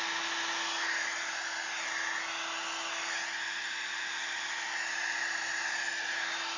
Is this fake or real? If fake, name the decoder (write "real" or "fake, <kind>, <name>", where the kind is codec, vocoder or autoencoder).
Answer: real